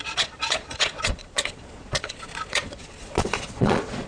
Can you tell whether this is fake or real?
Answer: fake